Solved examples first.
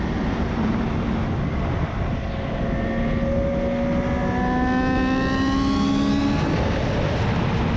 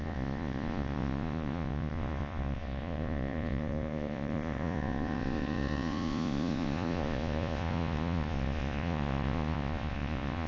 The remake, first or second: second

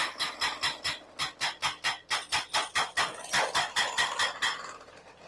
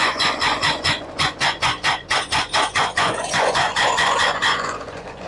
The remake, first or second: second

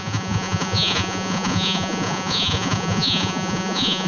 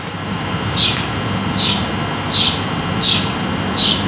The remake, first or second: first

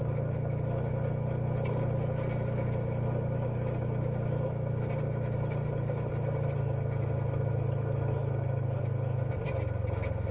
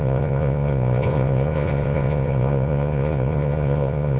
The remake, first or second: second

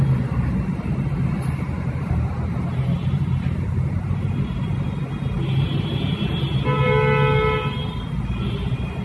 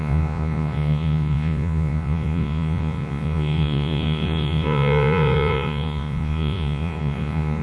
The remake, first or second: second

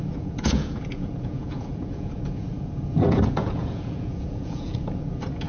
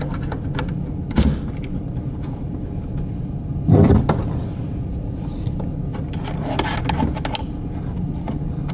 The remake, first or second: first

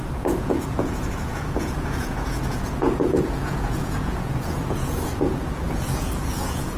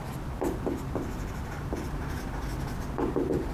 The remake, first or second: first